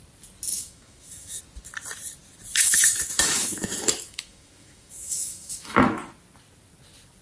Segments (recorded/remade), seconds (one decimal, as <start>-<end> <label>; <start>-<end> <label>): 0.0-0.5 recorded; 0.5-1.4 remade; 1.4-2.5 recorded; 2.5-5.8 remade; 5.8-7.2 recorded